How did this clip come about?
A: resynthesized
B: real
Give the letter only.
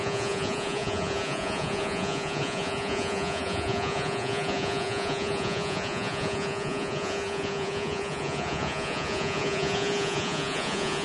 A